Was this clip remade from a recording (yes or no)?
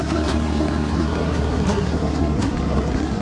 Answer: yes